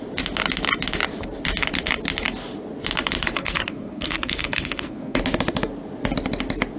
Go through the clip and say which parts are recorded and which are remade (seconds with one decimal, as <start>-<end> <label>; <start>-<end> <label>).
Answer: 0.0-3.4 recorded; 3.4-5.2 remade; 5.2-6.8 recorded

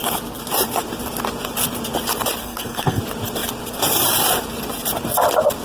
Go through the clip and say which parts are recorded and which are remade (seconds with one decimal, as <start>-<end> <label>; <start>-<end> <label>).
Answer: 0.0-2.4 recorded; 2.4-3.0 remade; 3.0-5.6 recorded

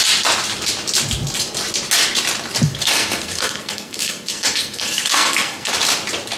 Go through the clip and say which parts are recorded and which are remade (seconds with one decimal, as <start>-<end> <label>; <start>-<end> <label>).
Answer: 0.0-2.7 recorded; 2.7-5.7 remade; 5.7-6.4 recorded

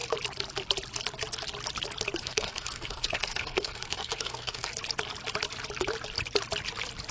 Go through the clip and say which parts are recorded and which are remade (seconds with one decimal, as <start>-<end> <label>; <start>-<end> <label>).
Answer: 0.0-2.2 recorded; 2.2-4.7 remade; 4.7-7.1 recorded